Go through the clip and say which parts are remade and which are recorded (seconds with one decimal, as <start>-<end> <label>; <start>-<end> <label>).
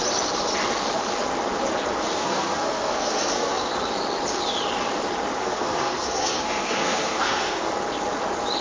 0.0-2.1 recorded; 2.1-3.7 remade; 3.7-5.4 recorded; 5.4-7.7 remade; 7.7-8.6 recorded